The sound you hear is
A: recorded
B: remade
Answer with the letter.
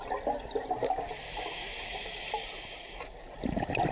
A